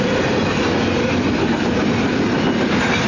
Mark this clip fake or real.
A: real